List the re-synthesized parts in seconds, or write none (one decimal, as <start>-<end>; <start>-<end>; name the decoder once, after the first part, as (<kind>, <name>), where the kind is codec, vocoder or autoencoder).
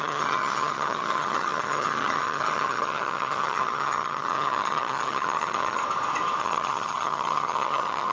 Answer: 0.0-5.8 (vocoder, HiFi-GAN); 6.4-8.1